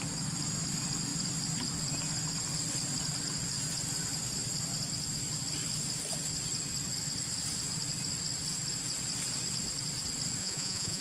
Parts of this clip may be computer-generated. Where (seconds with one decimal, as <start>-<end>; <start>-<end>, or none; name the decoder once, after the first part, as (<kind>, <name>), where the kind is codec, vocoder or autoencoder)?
10.4-11.0 (vocoder, Vocos)